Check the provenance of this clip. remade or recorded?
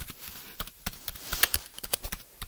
remade